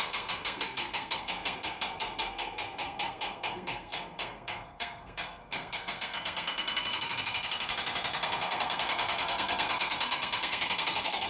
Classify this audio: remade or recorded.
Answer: remade